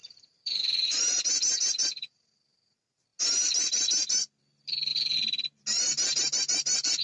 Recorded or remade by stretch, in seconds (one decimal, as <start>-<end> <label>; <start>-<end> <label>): 0.0-1.0 remade; 1.0-7.0 recorded